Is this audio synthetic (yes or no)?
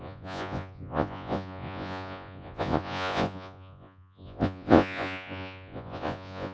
yes